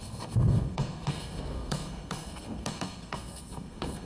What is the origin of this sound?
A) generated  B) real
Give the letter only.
A